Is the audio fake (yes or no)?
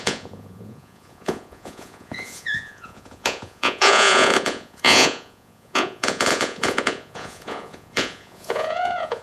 yes